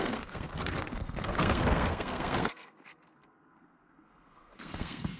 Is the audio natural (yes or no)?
no